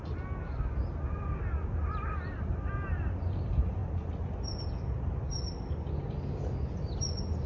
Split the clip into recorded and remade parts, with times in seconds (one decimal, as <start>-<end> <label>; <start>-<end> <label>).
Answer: 0.0-7.5 recorded